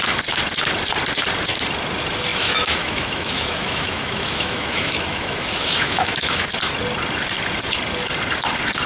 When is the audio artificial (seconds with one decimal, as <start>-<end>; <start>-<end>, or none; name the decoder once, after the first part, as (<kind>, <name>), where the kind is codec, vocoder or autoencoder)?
2.3-6.5 (autoencoder, DAC-VAE)